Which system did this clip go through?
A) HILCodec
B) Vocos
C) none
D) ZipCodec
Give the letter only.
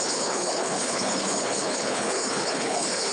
A